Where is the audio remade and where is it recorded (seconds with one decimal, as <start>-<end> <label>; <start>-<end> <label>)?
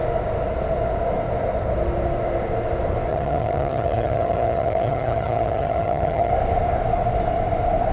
0.0-3.1 recorded; 3.1-6.3 remade; 6.3-7.9 recorded